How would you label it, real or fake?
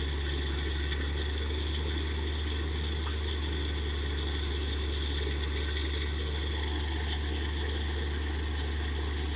real